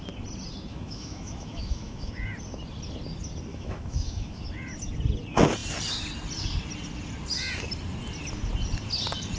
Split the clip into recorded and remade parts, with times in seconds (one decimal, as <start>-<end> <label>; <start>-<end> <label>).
0.0-0.7 recorded; 0.7-2.1 remade; 2.1-3.5 recorded; 3.5-4.4 remade; 4.4-9.4 recorded